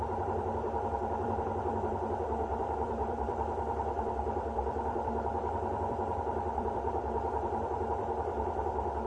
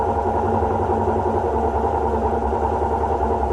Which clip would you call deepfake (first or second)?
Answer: first